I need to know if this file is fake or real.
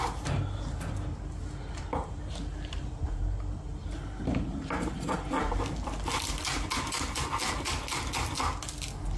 real